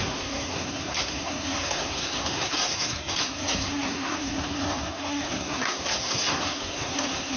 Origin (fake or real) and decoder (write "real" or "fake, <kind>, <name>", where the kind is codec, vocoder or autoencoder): fake, codec, SNAC